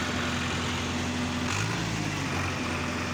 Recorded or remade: recorded